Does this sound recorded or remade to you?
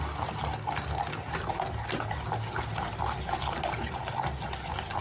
recorded